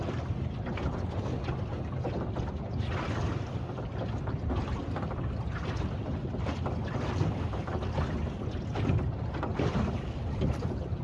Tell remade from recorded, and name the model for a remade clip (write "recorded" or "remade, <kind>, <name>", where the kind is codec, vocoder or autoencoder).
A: recorded